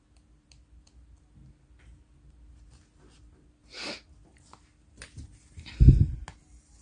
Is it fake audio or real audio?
real